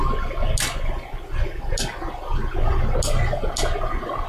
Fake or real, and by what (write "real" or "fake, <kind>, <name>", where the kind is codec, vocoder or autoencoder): real